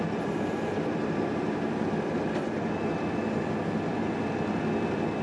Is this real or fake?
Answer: real